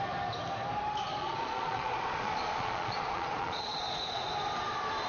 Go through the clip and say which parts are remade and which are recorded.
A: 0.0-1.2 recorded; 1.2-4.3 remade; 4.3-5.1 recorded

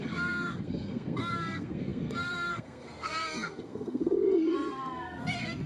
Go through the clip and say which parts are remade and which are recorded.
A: 0.0-5.7 remade

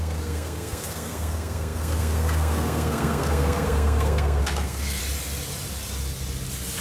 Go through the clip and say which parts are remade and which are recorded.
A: 0.0-5.0 remade; 5.0-6.8 recorded

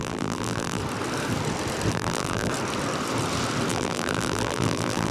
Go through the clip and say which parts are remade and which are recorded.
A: 0.0-0.8 remade; 0.8-1.9 recorded; 1.9-2.5 remade; 2.5-3.7 recorded; 3.7-5.1 remade

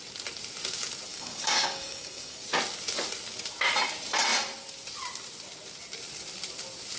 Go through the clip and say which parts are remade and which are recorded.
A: 0.0-1.1 recorded; 1.1-2.4 remade; 2.4-7.0 recorded